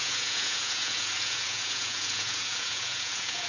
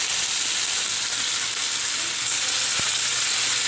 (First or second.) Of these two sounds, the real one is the second